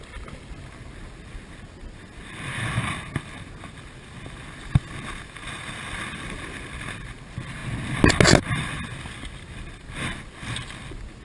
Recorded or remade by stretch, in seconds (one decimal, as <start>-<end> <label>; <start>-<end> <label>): 0.0-11.2 recorded